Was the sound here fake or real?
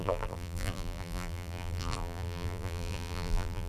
fake